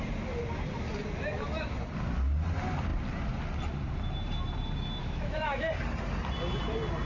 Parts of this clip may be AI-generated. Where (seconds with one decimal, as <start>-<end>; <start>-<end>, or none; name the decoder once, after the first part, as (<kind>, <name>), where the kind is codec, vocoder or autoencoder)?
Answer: 5.0-5.7 (autoencoder, DAC-VAE)